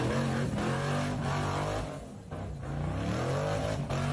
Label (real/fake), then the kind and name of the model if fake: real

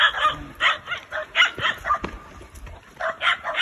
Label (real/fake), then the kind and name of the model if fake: real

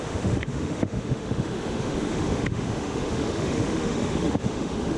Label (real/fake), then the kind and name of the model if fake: fake, autoencoder, DAC-VAE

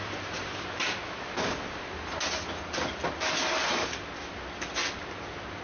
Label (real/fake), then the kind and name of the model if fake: real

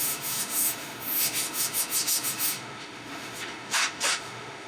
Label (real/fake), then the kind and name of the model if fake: fake, autoencoder, DAC-VAE